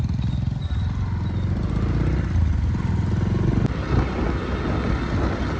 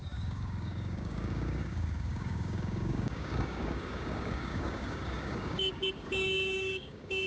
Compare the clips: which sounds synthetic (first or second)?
second